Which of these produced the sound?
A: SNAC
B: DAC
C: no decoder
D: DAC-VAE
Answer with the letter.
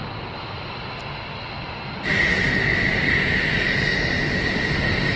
C